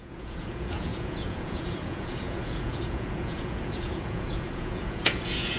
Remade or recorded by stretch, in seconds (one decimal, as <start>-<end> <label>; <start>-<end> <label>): 0.0-5.6 remade